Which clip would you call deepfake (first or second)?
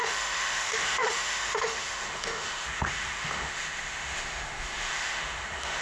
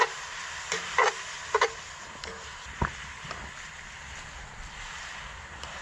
first